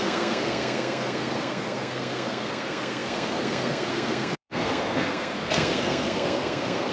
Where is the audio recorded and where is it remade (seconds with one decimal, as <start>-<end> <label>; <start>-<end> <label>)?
0.0-6.9 remade